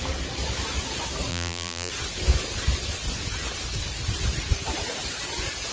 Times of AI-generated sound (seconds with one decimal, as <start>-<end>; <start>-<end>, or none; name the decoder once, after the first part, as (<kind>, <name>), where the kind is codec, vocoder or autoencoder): 1.3-1.9 (vocoder, BigVGAN v2)

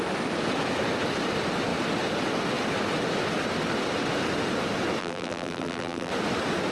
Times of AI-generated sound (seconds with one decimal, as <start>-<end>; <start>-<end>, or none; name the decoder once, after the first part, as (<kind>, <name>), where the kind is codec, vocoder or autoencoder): 5.0-6.1 (vocoder, BigVGAN v2)

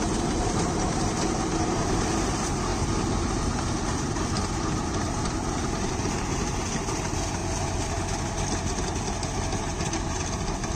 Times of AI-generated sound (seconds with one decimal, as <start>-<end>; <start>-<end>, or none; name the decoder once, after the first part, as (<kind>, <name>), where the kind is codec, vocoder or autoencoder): 0.0-7.4 (vocoder, BigVGAN v2); 9.6-10.8

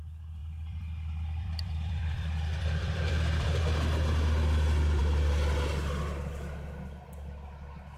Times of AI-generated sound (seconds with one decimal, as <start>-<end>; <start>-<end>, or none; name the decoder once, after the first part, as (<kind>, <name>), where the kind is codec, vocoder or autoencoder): 0.4-3.6 (vocoder, BigVGAN v2)

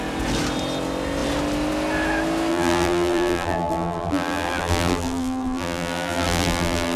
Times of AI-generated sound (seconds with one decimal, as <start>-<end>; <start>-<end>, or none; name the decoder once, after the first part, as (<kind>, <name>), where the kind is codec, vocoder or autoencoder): 2.5-7.0 (vocoder, BigVGAN v2)

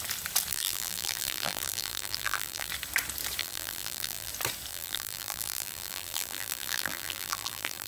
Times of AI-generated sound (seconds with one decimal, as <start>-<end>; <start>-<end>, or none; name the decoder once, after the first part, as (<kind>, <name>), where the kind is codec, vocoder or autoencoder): 0.5-2.7 (vocoder, BigVGAN v2); 3.4-4.3; 4.7-7.9